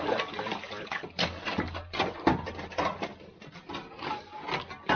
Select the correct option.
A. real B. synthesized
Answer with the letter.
A